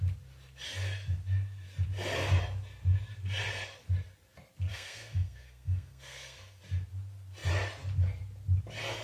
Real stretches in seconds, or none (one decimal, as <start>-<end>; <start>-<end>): 0.0-4.7; 6.6-9.0